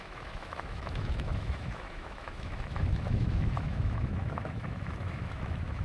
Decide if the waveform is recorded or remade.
remade